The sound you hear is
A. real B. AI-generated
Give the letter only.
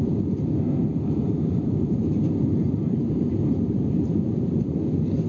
B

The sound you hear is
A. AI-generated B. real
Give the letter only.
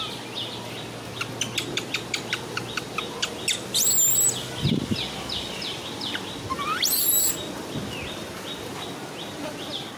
B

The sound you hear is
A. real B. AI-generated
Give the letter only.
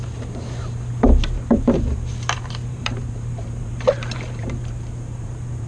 B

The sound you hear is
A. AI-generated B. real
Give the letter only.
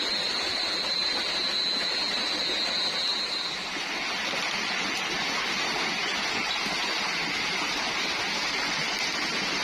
B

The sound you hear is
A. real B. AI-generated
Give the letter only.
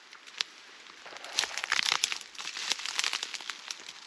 A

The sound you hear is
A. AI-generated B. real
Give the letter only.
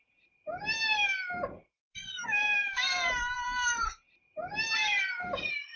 A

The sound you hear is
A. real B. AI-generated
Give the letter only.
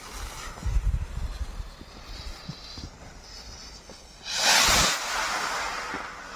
A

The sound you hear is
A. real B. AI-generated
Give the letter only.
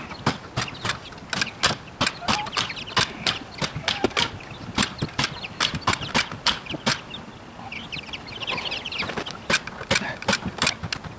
A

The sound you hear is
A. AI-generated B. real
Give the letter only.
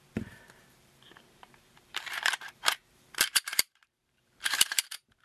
A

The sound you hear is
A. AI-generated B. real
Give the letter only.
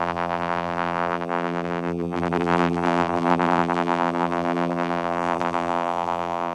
A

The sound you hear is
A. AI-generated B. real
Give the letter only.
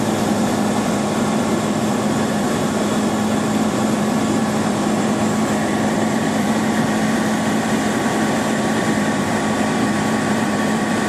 A